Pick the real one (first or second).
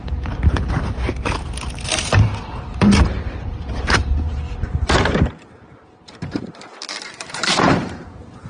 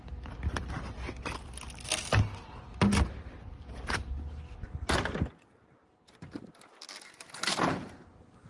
second